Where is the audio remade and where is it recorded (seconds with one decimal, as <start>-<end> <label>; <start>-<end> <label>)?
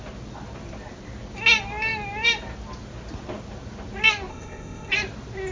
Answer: 0.0-4.3 recorded; 4.3-4.9 remade; 4.9-5.5 recorded